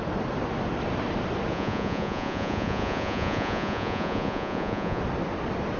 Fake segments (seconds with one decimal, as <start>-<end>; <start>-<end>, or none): 1.5-5.0